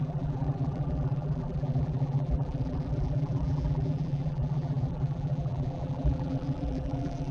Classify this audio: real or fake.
fake